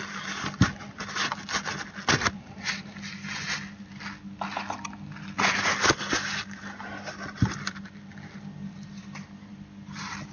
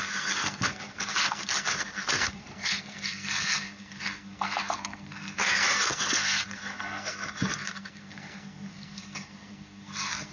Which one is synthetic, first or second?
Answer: second